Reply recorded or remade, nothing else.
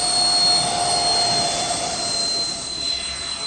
recorded